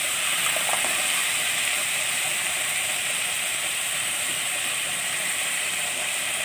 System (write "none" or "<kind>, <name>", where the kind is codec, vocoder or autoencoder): vocoder, BigVGAN v2